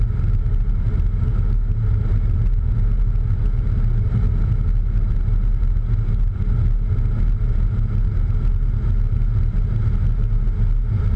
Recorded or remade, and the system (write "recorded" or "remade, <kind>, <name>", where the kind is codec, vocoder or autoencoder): recorded